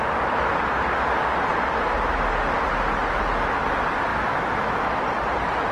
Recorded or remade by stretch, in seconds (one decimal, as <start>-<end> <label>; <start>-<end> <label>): 0.0-4.1 recorded; 4.1-5.0 remade; 5.0-5.7 recorded